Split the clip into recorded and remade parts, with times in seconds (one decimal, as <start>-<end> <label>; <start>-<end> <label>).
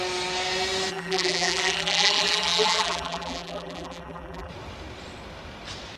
0.0-0.9 recorded; 0.9-4.5 remade; 4.5-6.0 recorded